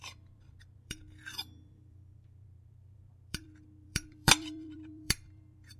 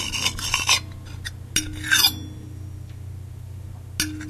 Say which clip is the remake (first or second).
first